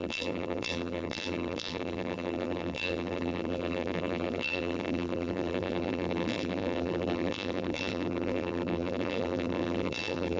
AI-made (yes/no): yes